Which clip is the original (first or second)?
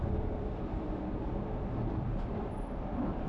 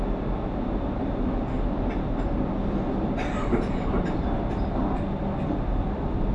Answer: second